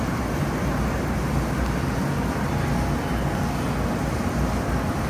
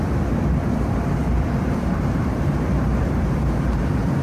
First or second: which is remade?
second